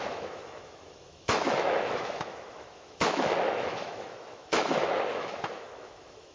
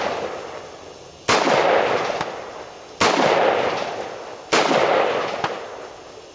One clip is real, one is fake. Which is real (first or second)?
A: second